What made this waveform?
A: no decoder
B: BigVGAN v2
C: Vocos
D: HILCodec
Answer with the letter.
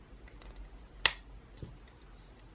A